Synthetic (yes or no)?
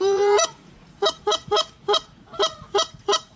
yes